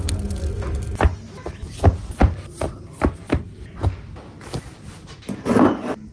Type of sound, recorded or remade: recorded